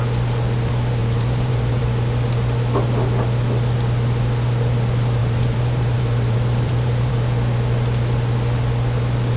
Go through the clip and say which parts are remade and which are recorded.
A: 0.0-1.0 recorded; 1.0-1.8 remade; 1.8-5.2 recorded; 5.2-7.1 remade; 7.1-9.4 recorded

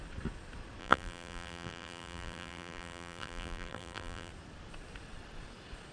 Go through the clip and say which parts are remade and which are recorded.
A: 0.0-0.8 recorded; 0.8-4.3 remade; 4.3-5.9 recorded

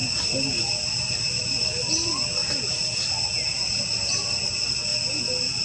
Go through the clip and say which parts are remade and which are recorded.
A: 0.0-1.0 recorded; 1.0-2.4 remade; 2.4-3.5 recorded; 3.5-4.9 remade; 4.9-5.6 recorded

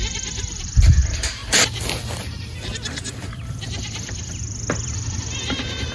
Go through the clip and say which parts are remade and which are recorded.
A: 0.0-5.9 remade

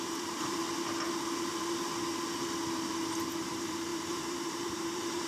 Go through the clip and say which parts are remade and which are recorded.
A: 0.0-0.6 remade; 0.6-3.4 recorded; 3.4-5.3 remade

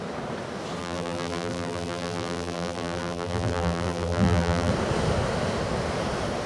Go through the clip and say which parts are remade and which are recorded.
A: 0.0-0.8 recorded; 0.8-4.7 remade; 4.7-6.5 recorded